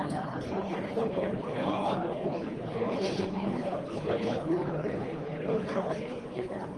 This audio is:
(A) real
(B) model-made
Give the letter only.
B